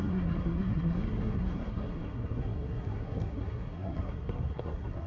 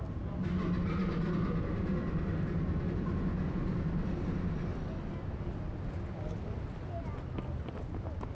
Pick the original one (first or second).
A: second